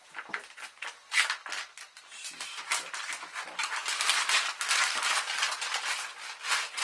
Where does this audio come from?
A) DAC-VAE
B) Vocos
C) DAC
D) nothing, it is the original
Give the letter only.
D